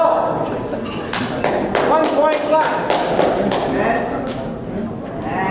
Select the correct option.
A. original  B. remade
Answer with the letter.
A